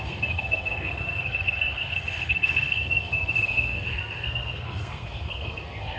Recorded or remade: remade